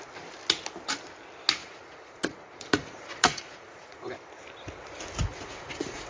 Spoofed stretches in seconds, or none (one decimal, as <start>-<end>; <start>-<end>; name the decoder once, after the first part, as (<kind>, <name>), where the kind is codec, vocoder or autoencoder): 1.6-4.1 (vocoder, Vocos); 5.3-6.1